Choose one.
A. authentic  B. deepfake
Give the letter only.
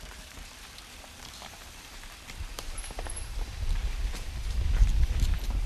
B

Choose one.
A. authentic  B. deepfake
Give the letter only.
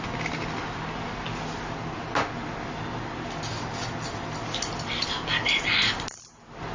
A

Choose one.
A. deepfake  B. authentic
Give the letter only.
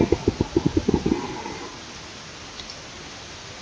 B